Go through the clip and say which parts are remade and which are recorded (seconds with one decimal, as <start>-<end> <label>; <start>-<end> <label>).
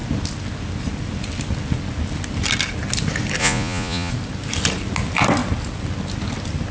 0.0-3.4 recorded; 3.4-4.1 remade; 4.1-6.7 recorded